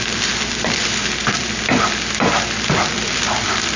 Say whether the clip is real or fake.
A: fake